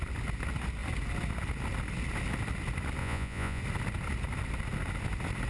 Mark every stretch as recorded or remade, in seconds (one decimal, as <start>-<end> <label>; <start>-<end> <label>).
0.0-3.0 recorded; 3.0-3.6 remade; 3.6-5.5 recorded